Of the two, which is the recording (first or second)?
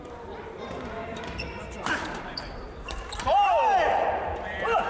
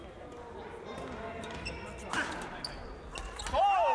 second